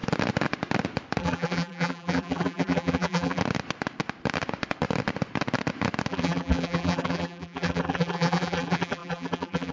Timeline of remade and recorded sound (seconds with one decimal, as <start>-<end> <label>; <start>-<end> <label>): 0.0-1.2 recorded; 1.2-3.4 remade; 3.4-6.1 recorded; 6.1-9.7 remade